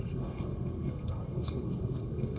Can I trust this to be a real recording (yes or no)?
no